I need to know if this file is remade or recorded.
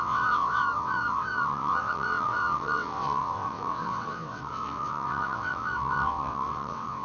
remade